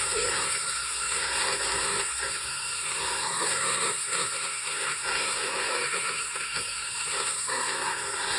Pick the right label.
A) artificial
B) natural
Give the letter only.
A